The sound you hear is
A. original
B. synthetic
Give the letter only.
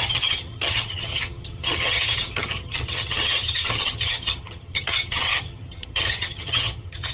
B